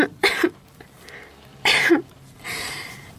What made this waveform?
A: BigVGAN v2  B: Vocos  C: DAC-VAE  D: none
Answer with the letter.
A